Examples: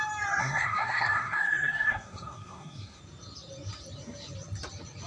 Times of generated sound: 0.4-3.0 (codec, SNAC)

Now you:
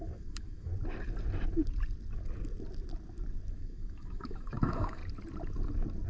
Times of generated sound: 0.0-0.7 (autoencoder, DAC-VAE); 3.5-5.0

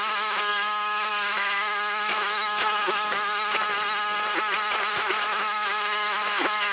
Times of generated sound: 0.0-3.6 (autoencoder, DAC-VAE); 4.9-6.7

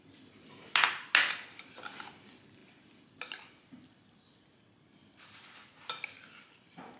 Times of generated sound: none

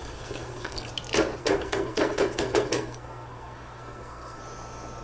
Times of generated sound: 0.0-0.9 (codec, SNAC); 1.4-4.4

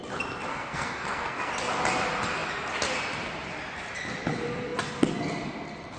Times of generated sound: 0.5-1.5 (codec, SNAC)

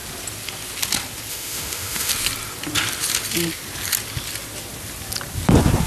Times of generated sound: 1.3-2.1 (autoencoder, DAC-VAE)

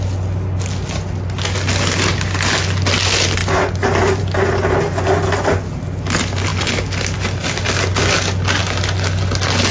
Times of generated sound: none